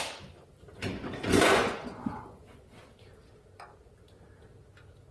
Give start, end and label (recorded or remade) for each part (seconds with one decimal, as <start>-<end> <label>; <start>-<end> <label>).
0.0-0.7 recorded; 0.7-2.8 remade; 2.8-5.1 recorded